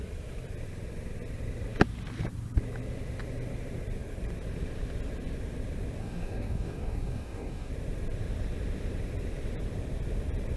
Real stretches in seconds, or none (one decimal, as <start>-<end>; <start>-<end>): 0.0-6.0; 7.7-10.6